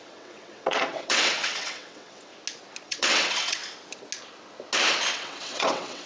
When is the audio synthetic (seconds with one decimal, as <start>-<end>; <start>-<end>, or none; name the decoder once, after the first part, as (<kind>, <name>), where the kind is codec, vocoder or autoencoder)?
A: 0.0-2.3 (vocoder, WaveNeXt); 2.9-3.6; 5.1-6.1